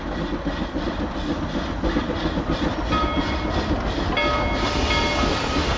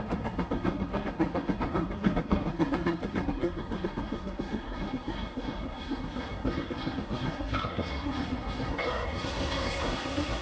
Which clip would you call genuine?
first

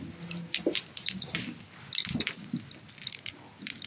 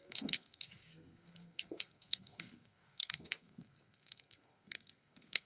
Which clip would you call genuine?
first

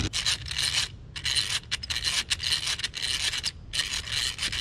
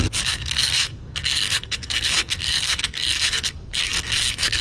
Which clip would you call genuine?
first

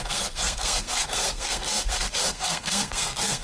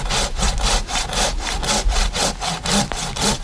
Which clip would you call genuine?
second